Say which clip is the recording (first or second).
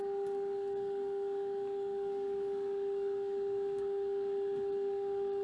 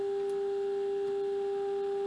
second